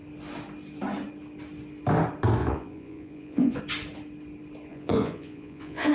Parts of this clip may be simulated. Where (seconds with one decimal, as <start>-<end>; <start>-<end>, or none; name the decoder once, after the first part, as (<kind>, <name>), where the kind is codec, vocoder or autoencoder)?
2.4-3.6 (vocoder, Vocos); 4.7-5.9